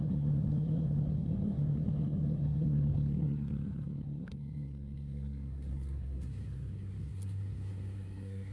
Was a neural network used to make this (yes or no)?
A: yes